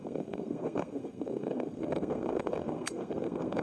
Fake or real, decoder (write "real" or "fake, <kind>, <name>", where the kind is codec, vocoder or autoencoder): fake, codec, SNAC